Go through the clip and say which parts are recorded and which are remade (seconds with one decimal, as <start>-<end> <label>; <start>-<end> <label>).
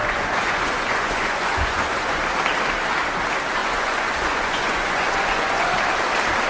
0.0-2.2 remade; 2.2-3.6 recorded; 3.6-5.7 remade; 5.7-6.5 recorded